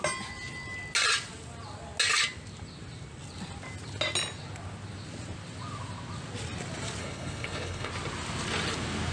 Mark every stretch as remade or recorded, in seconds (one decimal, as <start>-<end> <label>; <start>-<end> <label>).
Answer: 0.0-7.0 recorded; 7.0-7.9 remade; 7.9-9.1 recorded